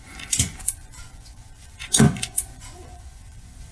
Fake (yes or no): yes